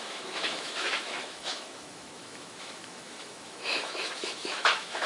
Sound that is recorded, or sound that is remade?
remade